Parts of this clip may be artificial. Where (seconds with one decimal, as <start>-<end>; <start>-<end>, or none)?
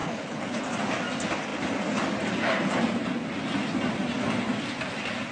0.0-0.6